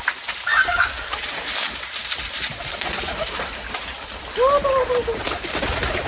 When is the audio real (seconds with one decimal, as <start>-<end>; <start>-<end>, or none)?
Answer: 0.0-6.1